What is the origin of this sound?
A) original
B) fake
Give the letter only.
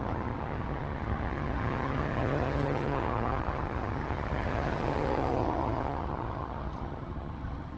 B